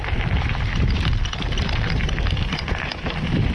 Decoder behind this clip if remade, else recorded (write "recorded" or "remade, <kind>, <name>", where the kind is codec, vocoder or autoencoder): remade, vocoder, BigVGAN v2